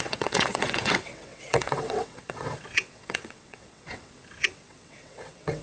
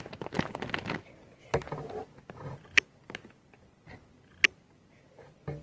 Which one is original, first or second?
second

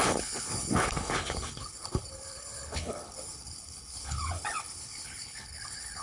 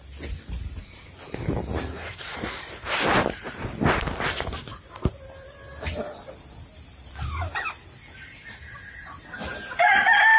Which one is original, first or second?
second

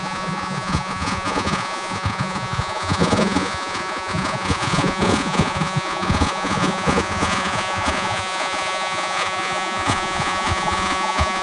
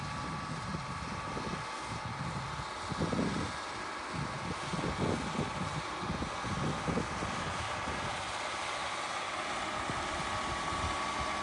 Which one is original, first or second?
second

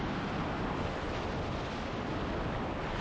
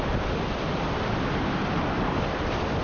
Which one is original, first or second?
first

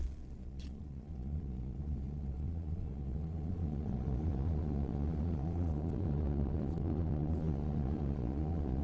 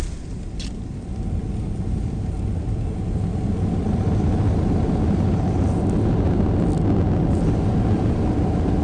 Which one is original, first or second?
second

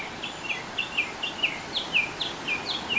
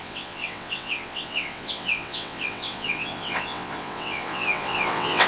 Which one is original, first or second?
first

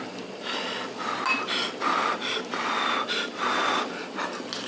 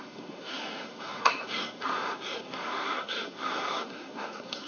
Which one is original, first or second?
first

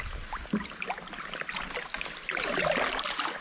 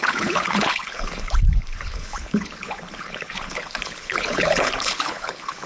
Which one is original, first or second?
first